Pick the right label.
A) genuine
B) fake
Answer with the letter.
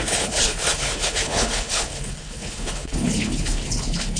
B